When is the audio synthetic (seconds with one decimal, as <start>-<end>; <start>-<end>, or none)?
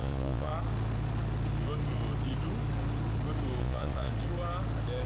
0.0-0.5; 3.6-4.1